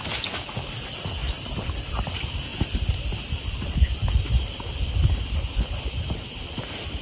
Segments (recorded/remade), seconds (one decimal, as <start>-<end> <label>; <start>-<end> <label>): 0.0-7.0 recorded